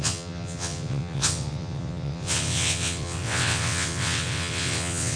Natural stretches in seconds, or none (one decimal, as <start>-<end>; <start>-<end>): none